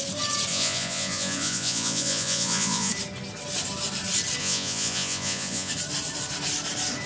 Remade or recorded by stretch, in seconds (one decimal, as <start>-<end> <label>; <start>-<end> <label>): 0.0-0.5 recorded; 0.5-2.9 remade; 2.9-4.4 recorded; 4.4-5.7 remade; 5.7-7.1 recorded